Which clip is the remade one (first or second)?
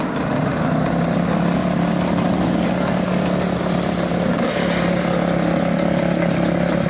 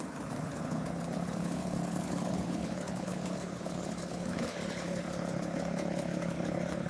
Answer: second